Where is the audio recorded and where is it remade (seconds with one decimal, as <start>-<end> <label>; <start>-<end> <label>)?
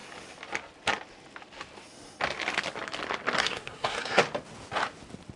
0.0-3.4 recorded; 3.4-4.2 remade; 4.2-5.4 recorded